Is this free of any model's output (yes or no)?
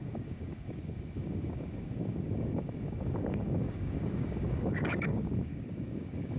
no